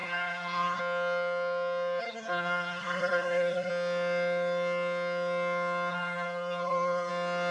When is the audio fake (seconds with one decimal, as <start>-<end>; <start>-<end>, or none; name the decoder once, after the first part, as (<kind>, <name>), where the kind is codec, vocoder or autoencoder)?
0.0-0.8 (codec, SNAC); 2.0-3.7; 5.9-7.1